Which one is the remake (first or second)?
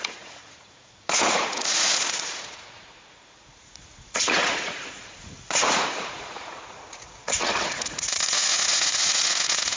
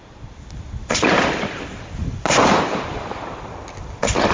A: first